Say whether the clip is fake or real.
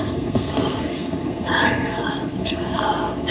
fake